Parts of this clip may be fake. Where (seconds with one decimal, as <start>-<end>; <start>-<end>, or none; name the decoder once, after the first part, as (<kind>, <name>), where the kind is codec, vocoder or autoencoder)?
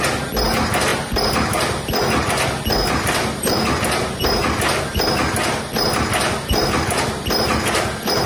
none